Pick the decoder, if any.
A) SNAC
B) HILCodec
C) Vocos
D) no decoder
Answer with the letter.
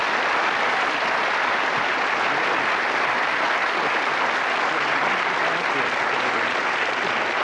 D